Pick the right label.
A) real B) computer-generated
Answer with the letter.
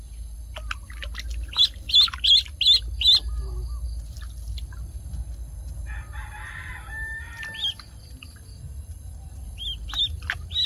A